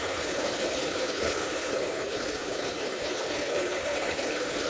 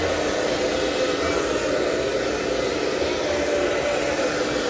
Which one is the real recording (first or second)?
second